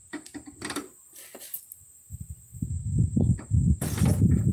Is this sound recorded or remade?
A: recorded